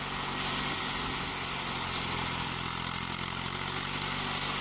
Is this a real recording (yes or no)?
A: yes